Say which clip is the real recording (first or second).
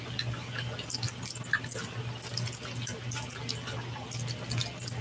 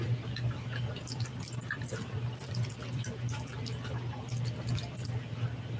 first